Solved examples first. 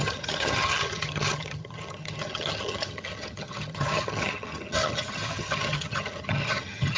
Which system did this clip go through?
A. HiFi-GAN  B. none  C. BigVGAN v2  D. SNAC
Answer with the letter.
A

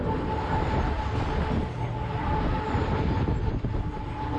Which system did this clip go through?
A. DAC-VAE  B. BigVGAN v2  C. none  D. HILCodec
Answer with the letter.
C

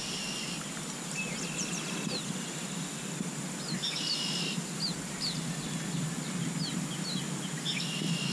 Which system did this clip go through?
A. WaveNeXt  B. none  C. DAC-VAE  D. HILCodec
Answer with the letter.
B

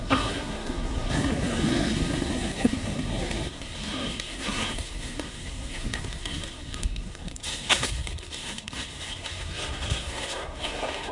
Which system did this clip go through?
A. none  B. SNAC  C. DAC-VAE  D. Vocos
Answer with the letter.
B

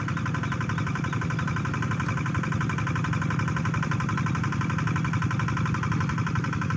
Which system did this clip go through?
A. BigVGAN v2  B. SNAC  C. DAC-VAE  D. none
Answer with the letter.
D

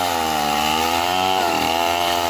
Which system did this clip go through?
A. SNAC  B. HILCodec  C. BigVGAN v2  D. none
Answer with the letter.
C